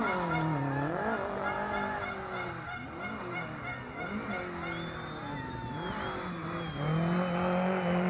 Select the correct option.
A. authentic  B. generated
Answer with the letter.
A